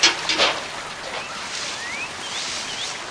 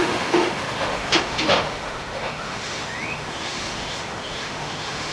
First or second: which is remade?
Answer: second